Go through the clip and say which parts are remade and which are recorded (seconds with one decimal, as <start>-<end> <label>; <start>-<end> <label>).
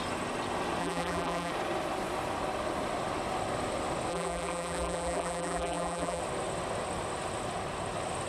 0.0-0.8 recorded; 0.8-1.5 remade; 1.5-4.1 recorded; 4.1-6.2 remade; 6.2-8.3 recorded